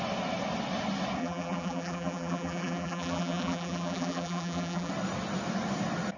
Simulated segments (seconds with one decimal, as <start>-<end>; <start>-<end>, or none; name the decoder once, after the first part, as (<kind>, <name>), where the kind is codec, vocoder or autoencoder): 1.2-4.9 (vocoder, BigVGAN v2)

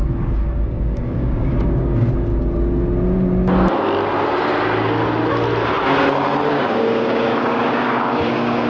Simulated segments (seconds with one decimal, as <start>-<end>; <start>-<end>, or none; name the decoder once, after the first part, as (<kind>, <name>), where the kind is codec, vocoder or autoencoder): 0.0-2.3 (codec, DAC); 6.5-8.7

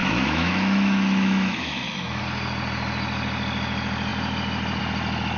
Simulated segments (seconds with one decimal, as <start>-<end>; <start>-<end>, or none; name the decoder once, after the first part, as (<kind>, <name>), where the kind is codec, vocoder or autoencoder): 0.0-2.2 (autoencoder, DAC-VAE)

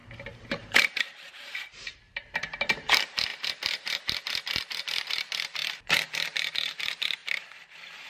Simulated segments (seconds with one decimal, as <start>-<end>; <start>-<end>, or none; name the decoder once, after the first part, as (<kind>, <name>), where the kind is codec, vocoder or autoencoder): 0.0-8.1 (vocoder, BigVGAN v2)

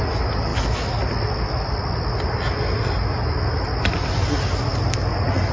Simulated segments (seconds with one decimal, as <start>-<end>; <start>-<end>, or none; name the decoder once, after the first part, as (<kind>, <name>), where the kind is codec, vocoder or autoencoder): none

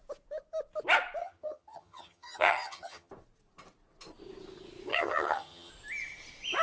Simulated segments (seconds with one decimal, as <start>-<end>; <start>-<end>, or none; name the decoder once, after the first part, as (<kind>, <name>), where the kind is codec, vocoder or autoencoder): 1.2-3.1 (vocoder, HiFi-GAN); 4.9-5.7

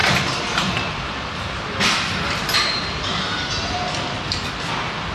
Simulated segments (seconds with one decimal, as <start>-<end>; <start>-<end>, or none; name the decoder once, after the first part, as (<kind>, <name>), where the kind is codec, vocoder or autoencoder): 0.0-3.1 (vocoder, BigVGAN v2)